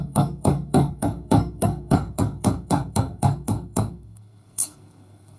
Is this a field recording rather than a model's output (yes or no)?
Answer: no